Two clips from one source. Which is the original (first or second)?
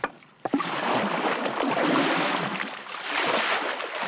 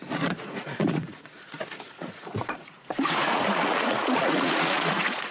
first